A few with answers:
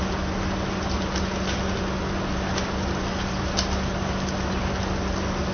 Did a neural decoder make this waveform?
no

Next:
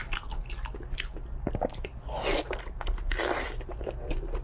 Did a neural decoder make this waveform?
no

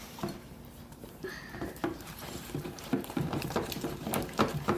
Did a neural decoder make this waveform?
yes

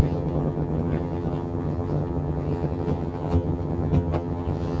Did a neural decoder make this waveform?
yes